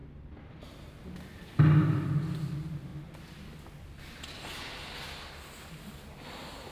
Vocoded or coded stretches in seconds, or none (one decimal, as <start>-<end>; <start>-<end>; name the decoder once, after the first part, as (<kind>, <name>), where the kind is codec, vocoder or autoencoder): none

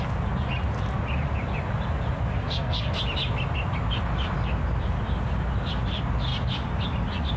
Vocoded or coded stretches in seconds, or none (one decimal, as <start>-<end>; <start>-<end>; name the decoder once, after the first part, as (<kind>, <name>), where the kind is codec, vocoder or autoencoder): 2.4-2.9 (codec, SNAC)

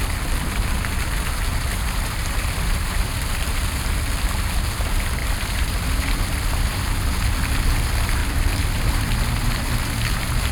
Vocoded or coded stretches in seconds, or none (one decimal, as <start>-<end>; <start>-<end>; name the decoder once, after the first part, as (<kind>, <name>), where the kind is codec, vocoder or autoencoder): 1.5-3.7 (vocoder, BigVGAN v2); 5.2-5.9; 8.2-9.8

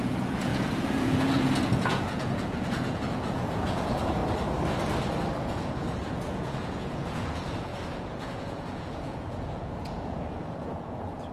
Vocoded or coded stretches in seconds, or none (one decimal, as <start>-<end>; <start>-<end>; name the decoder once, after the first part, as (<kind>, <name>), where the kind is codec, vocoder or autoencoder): 0.0-4.2 (vocoder, Vocos); 5.4-11.3

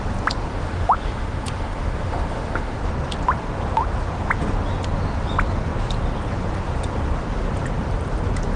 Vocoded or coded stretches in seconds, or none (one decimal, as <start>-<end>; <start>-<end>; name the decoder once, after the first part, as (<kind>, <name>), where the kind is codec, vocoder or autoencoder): 0.5-2.8 (autoencoder, DAC-VAE)

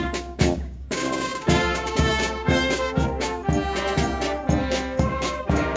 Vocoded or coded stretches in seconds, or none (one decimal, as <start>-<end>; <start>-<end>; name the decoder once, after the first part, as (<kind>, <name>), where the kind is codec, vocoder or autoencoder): 0.0-3.4 (codec, DAC); 4.6-5.8